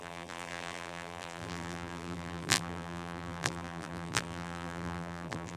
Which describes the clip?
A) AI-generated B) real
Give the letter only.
A